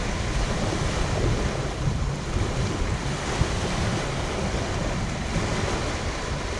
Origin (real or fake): real